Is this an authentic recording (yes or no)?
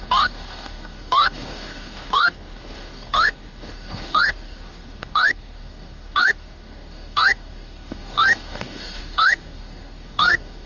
no